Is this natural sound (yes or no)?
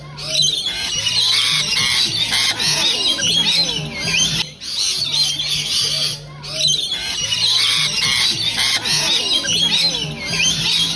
yes